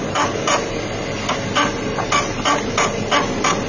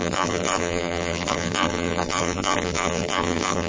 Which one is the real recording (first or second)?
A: first